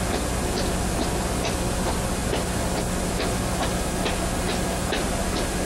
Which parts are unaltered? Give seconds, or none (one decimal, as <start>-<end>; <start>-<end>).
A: 0.0-5.6